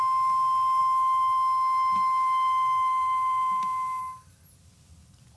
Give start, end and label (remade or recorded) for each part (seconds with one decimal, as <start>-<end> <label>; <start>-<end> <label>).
0.0-0.8 recorded; 0.8-4.0 remade; 4.0-5.4 recorded